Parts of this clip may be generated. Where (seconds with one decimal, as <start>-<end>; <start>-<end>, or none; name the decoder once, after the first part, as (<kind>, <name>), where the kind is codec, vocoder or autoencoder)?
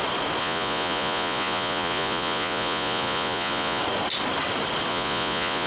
0.4-3.8 (vocoder, Vocos); 4.9-5.7